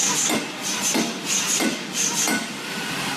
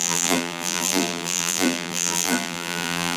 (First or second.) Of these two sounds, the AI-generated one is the second